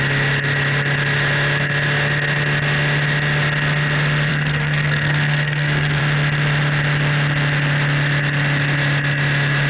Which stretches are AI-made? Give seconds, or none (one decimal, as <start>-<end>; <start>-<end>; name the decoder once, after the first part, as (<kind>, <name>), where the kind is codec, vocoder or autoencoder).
4.3-6.0 (codec, SNAC)